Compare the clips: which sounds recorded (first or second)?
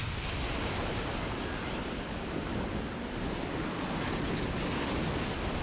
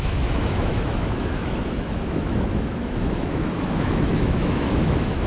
first